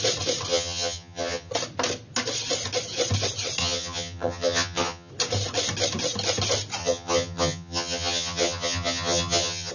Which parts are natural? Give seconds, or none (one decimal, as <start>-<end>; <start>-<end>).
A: 0.0-0.5; 1.5-3.6; 5.1-6.8